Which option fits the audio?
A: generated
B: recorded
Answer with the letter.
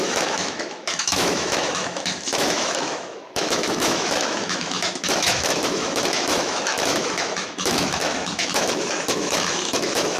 A